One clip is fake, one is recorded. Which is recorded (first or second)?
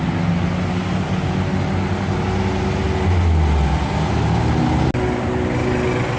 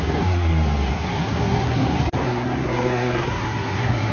first